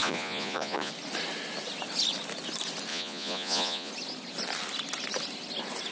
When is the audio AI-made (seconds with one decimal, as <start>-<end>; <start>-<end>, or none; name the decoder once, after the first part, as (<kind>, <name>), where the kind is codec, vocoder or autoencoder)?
0.0-0.9 (vocoder, Vocos); 2.9-3.9